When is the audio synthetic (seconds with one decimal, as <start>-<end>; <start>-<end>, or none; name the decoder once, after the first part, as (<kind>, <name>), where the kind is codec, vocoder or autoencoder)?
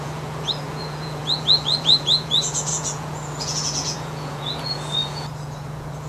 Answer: 0.0-6.1 (vocoder, Vocos)